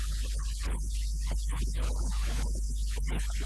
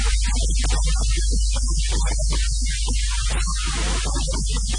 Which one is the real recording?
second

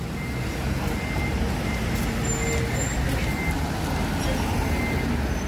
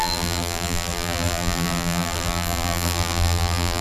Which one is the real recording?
first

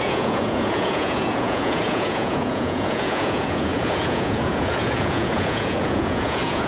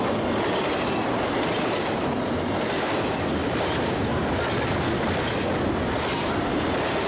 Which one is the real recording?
second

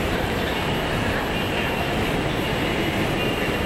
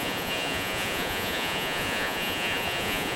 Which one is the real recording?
first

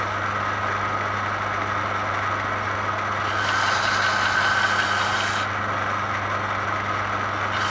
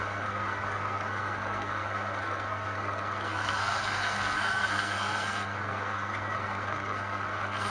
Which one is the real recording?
first